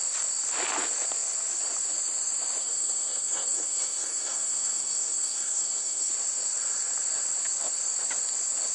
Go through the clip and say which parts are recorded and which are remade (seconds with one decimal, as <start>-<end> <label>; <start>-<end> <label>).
0.0-2.6 recorded; 2.6-6.1 remade; 6.1-8.7 recorded